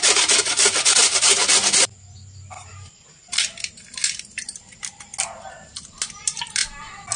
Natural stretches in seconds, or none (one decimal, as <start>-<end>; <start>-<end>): 0.0-7.2